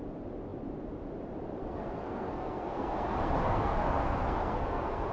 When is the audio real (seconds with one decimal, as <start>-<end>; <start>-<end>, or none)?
0.0-1.6